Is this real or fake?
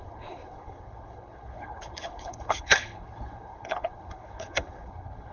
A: fake